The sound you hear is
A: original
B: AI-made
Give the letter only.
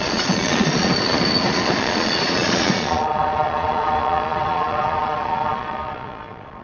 B